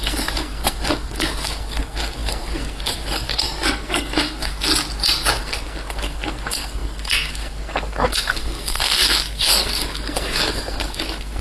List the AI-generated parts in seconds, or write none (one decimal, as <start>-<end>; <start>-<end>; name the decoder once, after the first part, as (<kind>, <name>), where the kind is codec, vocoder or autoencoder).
0.0-4.7 (codec, SNAC); 5.4-11.4